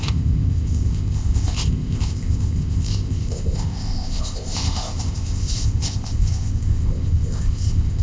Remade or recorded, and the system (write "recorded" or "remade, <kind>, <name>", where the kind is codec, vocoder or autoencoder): remade, codec, ZipCodec